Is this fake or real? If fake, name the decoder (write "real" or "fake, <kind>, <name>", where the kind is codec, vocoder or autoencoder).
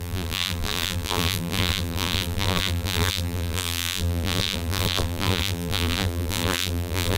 fake, vocoder, BigVGAN v2